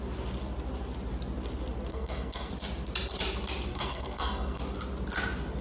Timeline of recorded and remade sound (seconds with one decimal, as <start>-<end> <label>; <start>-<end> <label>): 0.0-1.9 recorded; 1.9-2.5 remade; 2.5-3.7 recorded; 3.7-4.6 remade; 4.6-5.6 recorded